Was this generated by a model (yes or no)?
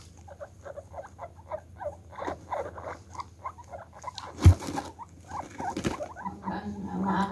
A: no